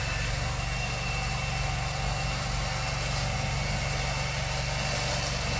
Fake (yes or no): no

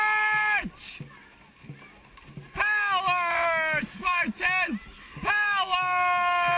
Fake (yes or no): no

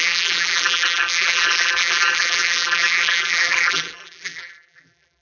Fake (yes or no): yes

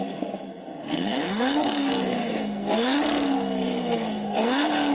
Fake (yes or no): yes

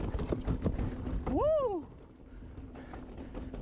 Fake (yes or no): no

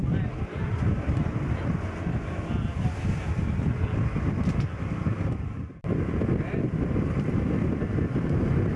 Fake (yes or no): no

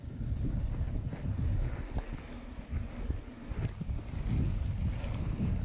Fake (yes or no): no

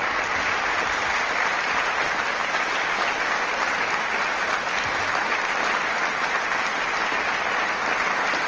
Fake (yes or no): no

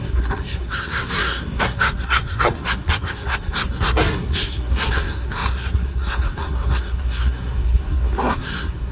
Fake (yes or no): yes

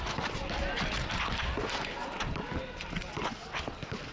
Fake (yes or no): no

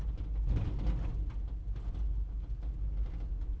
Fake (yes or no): no